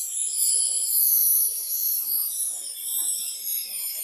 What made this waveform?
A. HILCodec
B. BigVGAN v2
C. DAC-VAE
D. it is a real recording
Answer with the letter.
D